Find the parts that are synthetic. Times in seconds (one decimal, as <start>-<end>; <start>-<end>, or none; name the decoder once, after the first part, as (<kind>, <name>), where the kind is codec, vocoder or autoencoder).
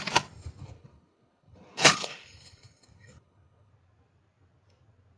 0.6-3.7 (codec, HILCodec)